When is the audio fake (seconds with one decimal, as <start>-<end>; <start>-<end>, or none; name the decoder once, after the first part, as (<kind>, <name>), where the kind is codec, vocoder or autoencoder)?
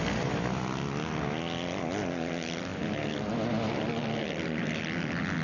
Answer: none